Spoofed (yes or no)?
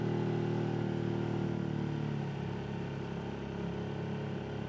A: no